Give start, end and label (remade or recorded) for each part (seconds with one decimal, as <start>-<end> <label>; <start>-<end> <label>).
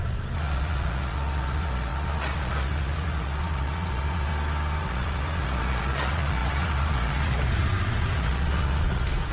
0.0-4.3 remade; 4.3-4.8 recorded; 4.8-9.3 remade